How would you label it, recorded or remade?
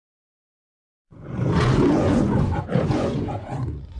remade